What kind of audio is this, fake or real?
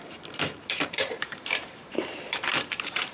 fake